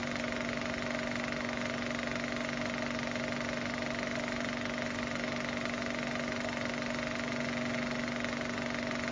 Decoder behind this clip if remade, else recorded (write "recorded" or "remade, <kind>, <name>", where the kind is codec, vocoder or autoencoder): recorded